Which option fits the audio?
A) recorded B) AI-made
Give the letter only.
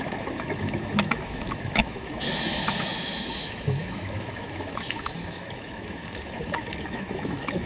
B